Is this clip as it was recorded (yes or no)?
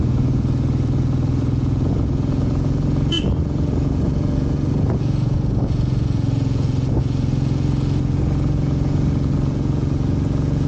no